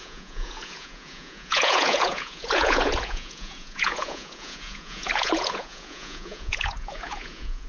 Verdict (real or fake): fake